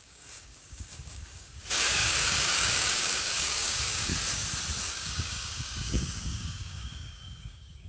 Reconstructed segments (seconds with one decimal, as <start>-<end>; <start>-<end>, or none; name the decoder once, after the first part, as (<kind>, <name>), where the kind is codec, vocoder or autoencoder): 0.0-4.1 (codec, DAC); 4.8-7.9